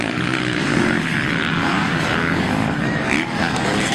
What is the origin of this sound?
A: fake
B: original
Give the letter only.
A